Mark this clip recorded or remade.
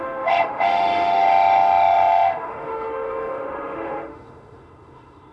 remade